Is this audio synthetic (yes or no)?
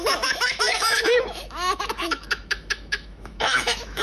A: yes